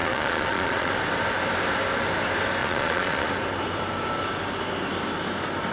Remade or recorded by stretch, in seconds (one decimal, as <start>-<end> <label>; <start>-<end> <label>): 0.0-0.9 remade; 0.9-2.6 recorded; 2.6-3.3 remade; 3.3-5.7 recorded